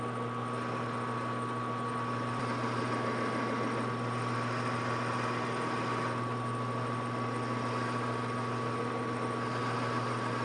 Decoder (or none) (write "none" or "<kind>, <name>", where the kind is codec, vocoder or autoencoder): none